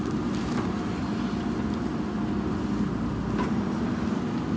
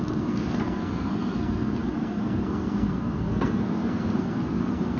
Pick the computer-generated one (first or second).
second